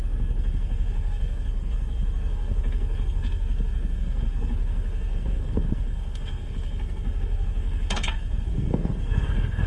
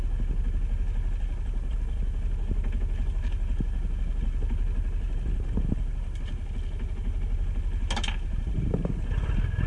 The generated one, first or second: first